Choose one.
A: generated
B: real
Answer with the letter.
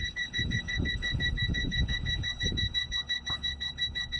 A